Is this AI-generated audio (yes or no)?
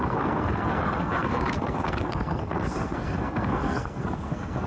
yes